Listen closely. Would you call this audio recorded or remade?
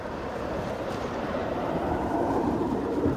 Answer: remade